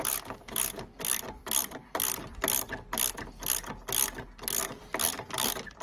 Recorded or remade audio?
recorded